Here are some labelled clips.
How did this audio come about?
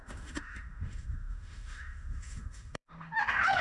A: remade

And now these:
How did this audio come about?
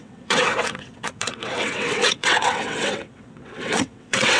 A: remade